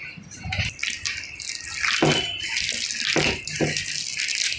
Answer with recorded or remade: recorded